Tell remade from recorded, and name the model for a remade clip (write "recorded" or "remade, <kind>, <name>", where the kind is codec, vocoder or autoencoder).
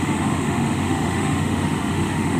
remade, autoencoder, DAC-VAE